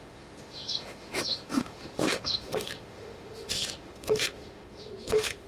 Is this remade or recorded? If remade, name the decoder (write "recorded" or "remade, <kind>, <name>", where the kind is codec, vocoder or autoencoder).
remade, autoencoder, DAC-VAE